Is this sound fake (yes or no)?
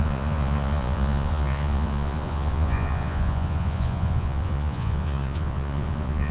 yes